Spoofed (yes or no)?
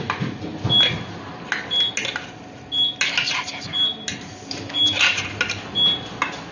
no